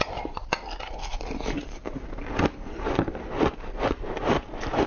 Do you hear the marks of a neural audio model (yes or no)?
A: no